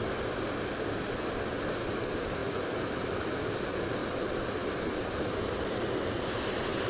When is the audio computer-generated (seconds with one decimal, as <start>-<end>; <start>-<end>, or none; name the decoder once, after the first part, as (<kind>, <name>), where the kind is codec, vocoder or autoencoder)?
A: 2.4-3.2 (vocoder, BigVGAN v2); 4.0-5.4